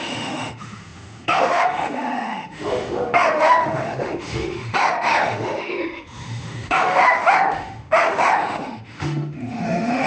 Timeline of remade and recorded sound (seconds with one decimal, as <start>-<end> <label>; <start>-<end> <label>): 0.0-10.1 remade